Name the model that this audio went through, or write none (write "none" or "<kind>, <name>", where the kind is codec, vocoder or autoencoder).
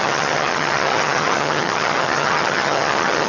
vocoder, HiFi-GAN